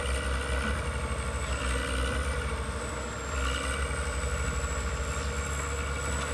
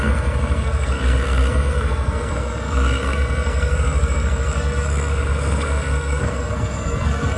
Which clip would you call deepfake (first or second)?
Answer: second